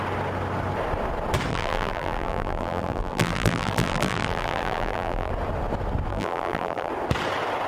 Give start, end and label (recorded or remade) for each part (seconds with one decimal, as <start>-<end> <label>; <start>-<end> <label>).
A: 0.0-1.5 recorded; 1.5-5.3 remade; 5.3-6.1 recorded; 6.1-6.9 remade; 6.9-7.7 recorded